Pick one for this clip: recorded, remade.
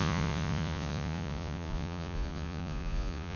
remade